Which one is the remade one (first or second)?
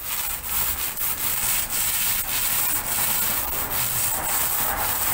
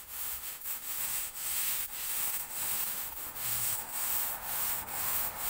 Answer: second